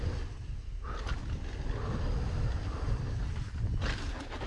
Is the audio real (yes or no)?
yes